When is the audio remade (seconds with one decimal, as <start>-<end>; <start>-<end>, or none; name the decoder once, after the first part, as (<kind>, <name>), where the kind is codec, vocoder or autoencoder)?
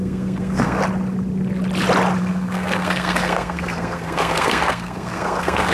0.0-0.8 (codec, SNAC); 2.2-5.7